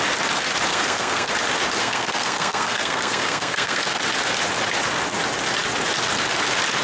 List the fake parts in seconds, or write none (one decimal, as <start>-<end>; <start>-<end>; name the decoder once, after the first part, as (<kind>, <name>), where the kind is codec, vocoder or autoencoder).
0.7-1.3 (codec, SNAC); 1.8-4.0